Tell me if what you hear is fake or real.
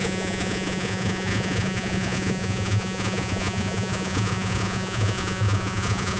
fake